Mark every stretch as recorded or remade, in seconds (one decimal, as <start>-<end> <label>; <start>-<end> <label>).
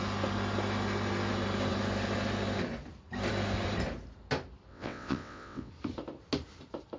0.0-4.7 recorded; 4.7-5.7 remade; 5.7-7.0 recorded